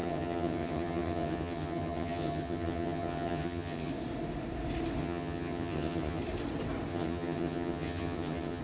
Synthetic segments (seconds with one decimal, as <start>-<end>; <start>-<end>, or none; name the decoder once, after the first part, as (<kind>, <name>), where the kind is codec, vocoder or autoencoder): 0.0-3.9 (vocoder, HiFi-GAN); 5.0-6.2; 6.9-8.6